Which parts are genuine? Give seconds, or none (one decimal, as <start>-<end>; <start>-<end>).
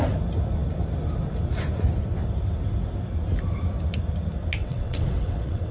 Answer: 0.0-4.6